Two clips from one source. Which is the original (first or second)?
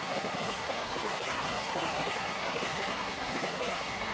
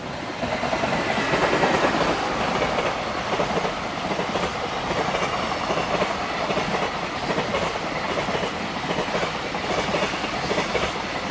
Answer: second